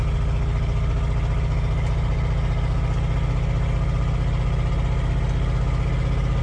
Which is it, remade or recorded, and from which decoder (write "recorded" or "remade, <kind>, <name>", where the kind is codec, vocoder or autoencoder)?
recorded